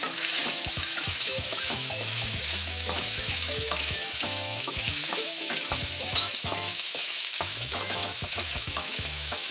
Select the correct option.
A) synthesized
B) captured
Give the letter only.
A